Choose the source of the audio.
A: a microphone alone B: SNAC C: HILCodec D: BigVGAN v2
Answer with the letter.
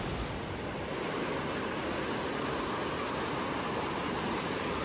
A